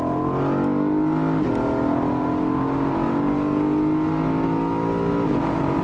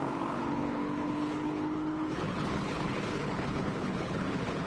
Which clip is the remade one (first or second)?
second